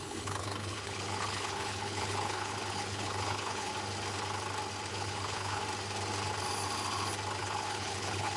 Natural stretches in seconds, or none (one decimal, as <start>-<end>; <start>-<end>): 3.7-4.9; 5.6-7.4